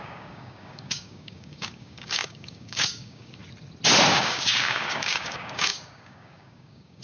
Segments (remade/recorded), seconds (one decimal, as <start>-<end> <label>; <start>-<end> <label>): 0.0-3.4 remade; 3.4-4.1 recorded; 4.1-7.0 remade